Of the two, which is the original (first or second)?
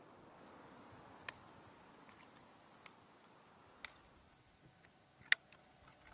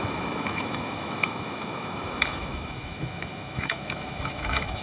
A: first